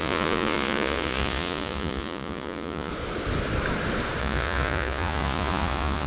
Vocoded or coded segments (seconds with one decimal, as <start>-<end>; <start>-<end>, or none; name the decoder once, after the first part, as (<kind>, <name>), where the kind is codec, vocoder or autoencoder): 0.0-2.9 (vocoder, Vocos); 4.2-6.1

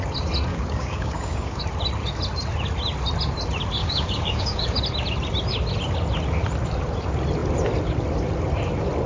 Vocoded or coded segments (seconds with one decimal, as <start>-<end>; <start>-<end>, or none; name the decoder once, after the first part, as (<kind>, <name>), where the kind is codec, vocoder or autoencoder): 0.5-1.6 (codec, DAC); 3.8-4.8

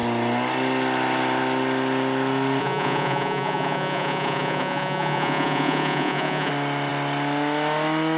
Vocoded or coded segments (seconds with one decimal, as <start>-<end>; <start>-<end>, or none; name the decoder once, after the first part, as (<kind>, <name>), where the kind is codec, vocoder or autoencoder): 2.6-6.5 (vocoder, Vocos)

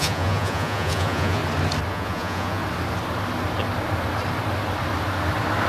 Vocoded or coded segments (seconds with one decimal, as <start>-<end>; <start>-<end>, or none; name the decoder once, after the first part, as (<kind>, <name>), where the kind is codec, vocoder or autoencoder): 0.0-1.4 (vocoder, Vocos); 1.9-2.6

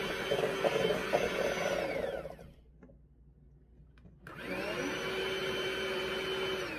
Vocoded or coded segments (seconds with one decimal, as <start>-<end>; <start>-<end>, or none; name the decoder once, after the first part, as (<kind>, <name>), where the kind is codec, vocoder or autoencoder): 5.4-6.1 (vocoder, BigVGAN v2)

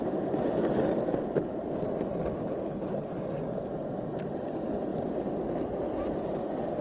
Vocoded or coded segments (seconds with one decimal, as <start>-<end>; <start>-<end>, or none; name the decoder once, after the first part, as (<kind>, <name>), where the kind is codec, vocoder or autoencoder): 2.4-3.1 (codec, HILCodec)

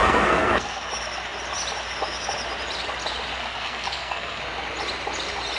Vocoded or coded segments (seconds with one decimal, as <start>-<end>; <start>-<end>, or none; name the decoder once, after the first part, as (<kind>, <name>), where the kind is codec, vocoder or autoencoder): 0.0-0.9 (codec, SNAC); 3.4-4.4